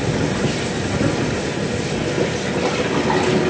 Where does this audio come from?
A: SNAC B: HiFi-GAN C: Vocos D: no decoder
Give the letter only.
D